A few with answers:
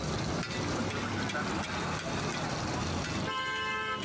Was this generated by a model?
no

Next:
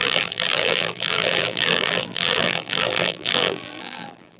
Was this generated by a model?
yes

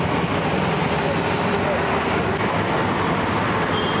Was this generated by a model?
no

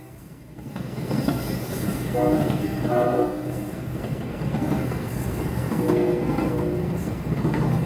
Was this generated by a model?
yes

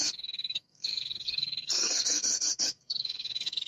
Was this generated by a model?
yes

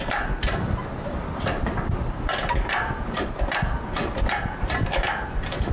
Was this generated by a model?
no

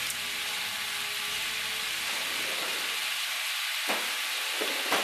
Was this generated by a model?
no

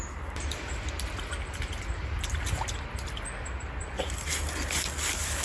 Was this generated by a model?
no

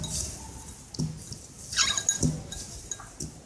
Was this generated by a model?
no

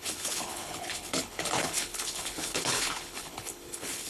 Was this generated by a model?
yes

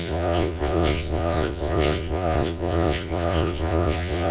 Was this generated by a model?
yes